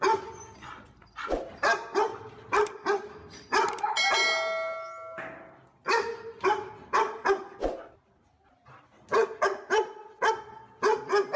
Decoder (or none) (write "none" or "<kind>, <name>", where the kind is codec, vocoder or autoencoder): none